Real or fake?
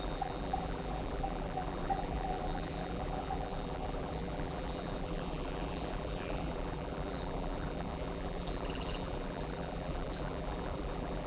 fake